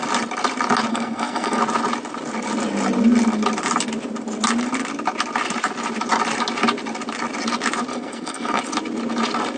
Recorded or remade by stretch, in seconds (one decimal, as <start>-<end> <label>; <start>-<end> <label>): 0.0-0.9 recorded; 0.9-1.6 remade; 1.6-7.9 recorded; 7.9-8.6 remade; 8.6-9.6 recorded